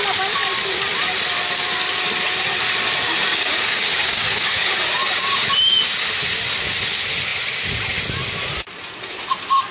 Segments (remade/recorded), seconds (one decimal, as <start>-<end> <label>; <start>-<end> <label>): 0.0-3.3 recorded; 3.3-5.5 remade; 5.5-9.7 recorded